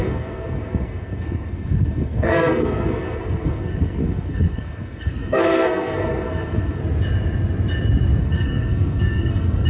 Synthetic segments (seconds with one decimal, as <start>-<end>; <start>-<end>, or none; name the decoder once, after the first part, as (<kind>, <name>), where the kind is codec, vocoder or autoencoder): 0.0-6.8 (codec, SNAC); 8.2-9.7